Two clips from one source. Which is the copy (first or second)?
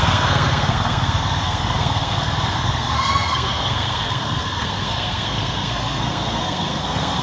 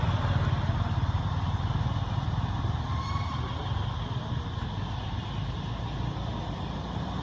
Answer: first